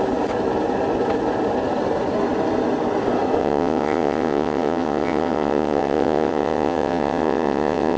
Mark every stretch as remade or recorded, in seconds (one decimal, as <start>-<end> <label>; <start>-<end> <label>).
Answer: 0.0-3.4 recorded; 3.4-8.0 remade